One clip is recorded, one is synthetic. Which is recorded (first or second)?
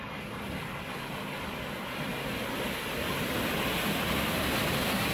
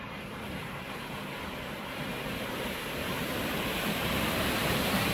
first